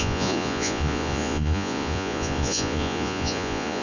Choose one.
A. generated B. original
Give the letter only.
A